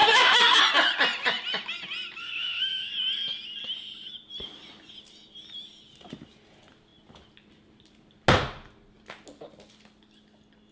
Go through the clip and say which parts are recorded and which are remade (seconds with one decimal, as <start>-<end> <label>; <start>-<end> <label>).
0.0-0.6 remade; 0.6-2.2 recorded; 2.2-2.9 remade; 2.9-10.7 recorded